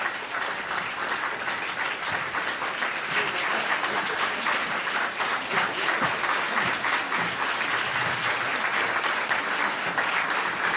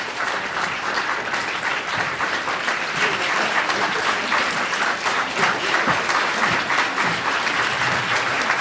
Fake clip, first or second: second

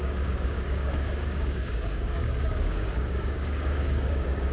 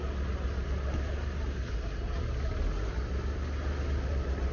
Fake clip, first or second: first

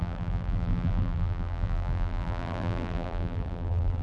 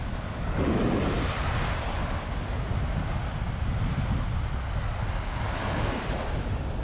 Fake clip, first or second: first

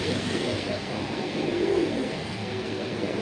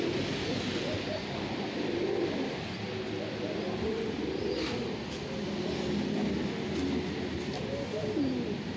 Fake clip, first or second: first